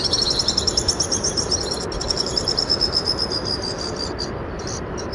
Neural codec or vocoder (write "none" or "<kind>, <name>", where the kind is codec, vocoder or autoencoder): none